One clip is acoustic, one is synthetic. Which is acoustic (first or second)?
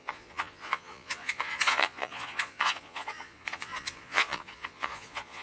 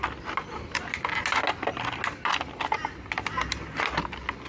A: second